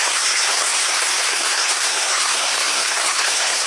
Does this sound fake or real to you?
fake